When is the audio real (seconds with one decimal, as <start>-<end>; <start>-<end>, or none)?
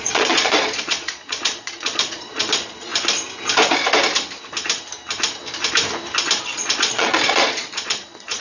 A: 2.9-6.4